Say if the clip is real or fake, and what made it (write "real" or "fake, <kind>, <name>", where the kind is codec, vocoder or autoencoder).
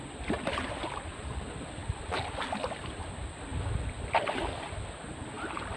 real